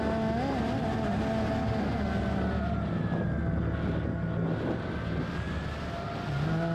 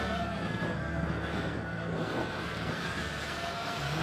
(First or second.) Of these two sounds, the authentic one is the first